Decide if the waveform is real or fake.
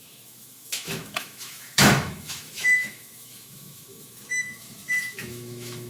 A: fake